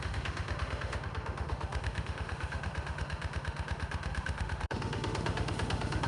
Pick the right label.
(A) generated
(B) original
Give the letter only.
A